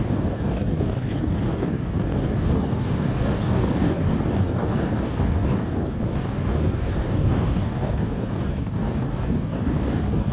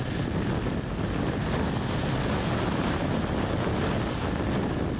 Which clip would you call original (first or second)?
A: second